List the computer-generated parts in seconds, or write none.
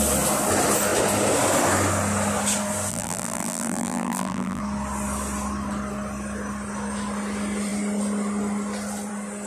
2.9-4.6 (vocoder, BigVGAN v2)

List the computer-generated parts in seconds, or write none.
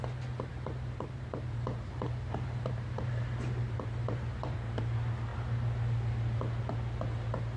0.5-4.8 (vocoder, BigVGAN v2)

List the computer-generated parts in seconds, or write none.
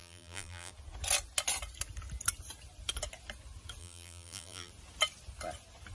0.0-0.7 (vocoder, BigVGAN v2); 3.8-4.7